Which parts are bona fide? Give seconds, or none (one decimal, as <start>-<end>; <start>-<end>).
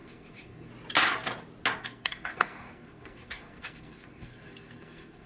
0.7-1.8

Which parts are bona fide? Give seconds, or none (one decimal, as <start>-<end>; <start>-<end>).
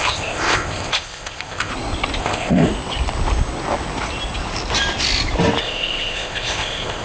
1.7-2.2; 2.7-5.6